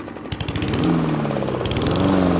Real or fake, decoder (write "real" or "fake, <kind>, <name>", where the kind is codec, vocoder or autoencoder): real